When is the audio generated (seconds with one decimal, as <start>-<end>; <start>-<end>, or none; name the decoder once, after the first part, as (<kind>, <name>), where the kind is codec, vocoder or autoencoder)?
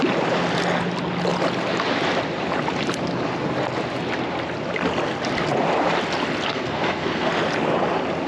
6.5-7.3 (codec, SNAC)